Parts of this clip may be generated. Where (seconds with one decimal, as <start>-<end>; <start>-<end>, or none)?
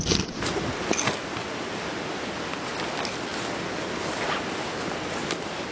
none